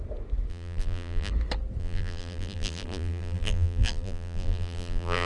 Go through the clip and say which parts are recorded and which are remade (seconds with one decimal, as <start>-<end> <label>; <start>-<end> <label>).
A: 0.0-0.5 recorded; 0.5-1.3 remade; 1.3-1.8 recorded; 1.8-5.3 remade